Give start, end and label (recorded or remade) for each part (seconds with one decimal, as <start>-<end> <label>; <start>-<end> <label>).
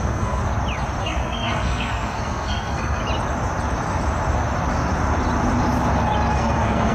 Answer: 0.0-0.4 remade; 0.4-1.0 recorded; 1.0-3.0 remade; 3.0-6.3 recorded; 6.3-6.9 remade